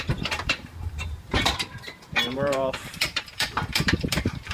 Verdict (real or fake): fake